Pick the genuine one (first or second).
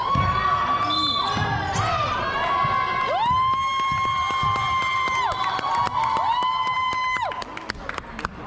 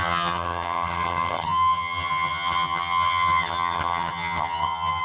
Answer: first